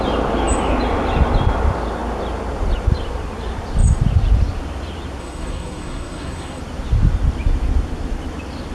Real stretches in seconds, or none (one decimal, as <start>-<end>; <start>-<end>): 0.0-5.2; 6.6-8.7